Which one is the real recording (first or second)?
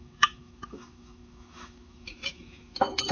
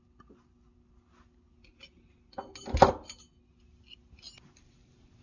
second